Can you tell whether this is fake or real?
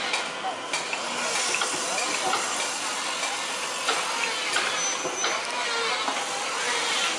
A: real